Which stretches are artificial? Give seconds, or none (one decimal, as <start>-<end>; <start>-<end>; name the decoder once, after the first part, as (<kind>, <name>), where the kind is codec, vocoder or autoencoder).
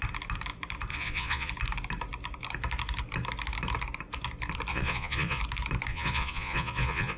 0.9-1.5 (vocoder, Vocos); 4.7-5.4; 5.9-7.2